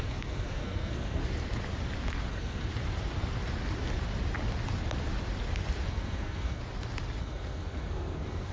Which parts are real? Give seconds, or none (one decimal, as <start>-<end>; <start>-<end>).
1.2-2.3; 2.7-5.9; 6.6-7.2